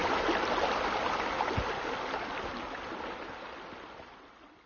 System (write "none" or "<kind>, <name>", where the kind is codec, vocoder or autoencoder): none